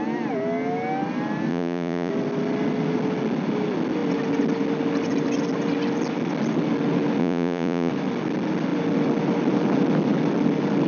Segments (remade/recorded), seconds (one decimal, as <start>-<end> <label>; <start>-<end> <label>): 0.0-1.5 recorded; 1.5-2.1 remade; 2.1-7.2 recorded; 7.2-7.9 remade; 7.9-10.9 recorded